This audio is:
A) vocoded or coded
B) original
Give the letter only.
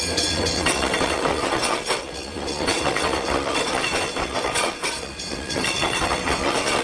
A